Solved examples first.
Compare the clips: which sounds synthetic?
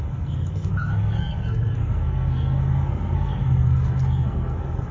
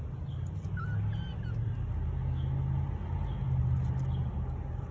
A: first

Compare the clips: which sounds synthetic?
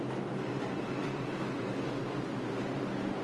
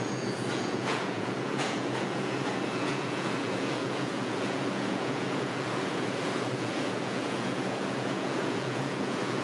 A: second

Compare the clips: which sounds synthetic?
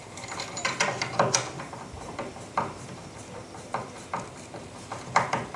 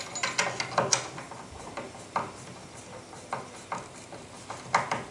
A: first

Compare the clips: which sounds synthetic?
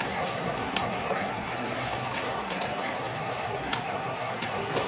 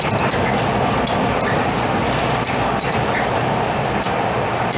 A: first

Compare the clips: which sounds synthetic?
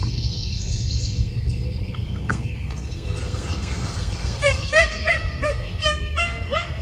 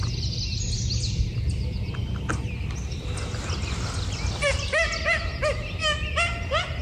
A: first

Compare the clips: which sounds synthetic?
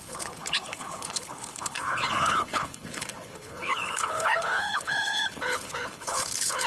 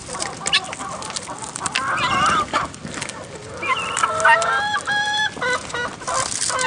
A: first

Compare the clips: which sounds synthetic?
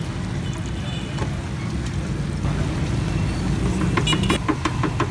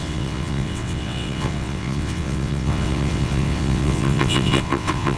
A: second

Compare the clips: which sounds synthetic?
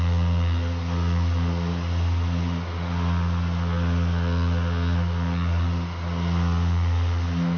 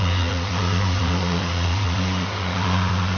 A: second